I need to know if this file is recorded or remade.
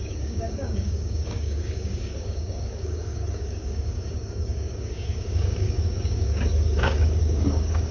remade